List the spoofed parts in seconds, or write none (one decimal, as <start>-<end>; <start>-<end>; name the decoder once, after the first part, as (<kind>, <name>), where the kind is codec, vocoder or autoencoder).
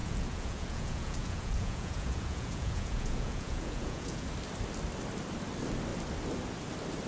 0.0-4.3 (vocoder, Vocos)